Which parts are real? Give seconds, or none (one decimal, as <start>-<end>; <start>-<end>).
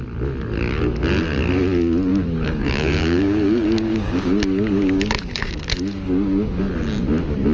0.0-2.1; 6.6-7.5